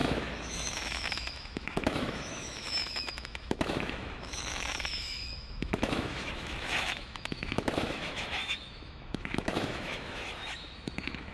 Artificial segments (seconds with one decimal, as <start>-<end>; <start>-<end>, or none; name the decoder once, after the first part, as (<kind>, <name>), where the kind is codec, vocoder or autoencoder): 0.0-11.3 (autoencoder, DAC-VAE)